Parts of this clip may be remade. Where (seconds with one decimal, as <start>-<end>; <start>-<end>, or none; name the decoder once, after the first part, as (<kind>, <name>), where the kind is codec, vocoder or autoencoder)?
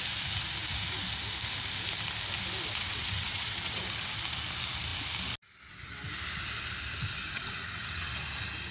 2.7-3.8 (vocoder, WaveNeXt); 7.2-8.1